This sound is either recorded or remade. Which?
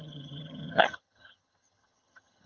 remade